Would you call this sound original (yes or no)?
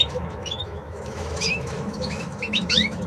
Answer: no